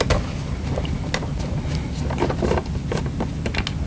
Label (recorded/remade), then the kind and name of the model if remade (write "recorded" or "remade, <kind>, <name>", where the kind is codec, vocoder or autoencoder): recorded